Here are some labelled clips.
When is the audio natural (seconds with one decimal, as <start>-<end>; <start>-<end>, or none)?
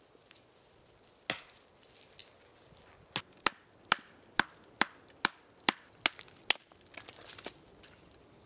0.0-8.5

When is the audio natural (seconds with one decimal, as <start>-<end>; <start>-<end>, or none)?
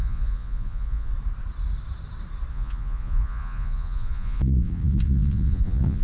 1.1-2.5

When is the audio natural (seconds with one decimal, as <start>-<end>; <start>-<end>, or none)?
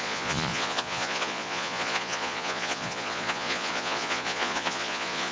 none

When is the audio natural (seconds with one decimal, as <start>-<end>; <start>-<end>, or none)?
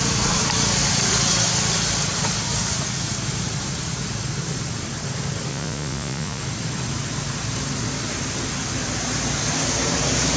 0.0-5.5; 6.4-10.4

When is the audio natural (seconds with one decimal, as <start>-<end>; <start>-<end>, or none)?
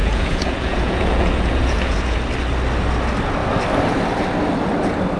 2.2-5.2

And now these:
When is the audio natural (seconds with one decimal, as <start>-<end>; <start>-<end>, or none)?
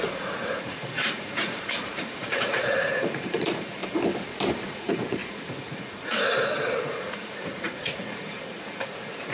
3.8-4.7